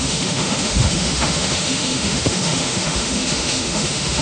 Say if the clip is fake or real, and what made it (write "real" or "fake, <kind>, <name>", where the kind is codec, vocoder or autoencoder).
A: fake, autoencoder, DAC-VAE